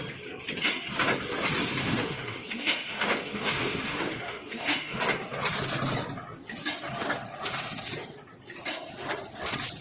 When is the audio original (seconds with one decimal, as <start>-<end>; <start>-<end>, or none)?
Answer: 0.0-1.8; 5.0-9.8